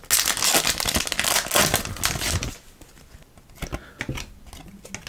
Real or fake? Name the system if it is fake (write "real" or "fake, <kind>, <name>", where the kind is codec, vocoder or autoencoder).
real